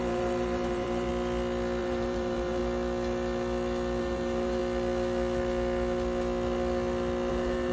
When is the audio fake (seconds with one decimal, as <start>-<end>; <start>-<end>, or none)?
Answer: 0.0-1.1; 1.8-2.6; 4.0-4.6; 7.3-7.7